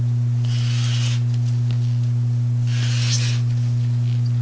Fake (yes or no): no